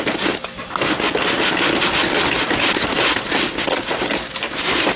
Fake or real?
real